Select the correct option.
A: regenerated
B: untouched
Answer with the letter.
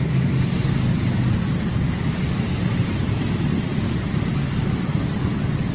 B